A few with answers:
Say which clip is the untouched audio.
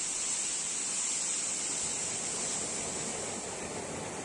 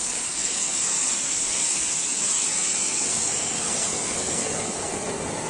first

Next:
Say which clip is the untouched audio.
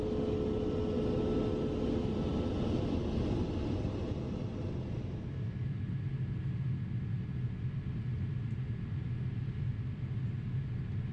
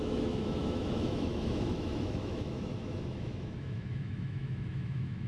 first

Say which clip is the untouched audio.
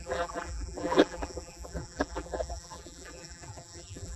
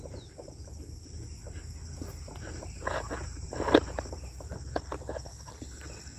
second